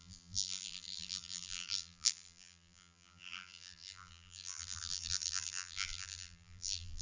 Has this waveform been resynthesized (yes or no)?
yes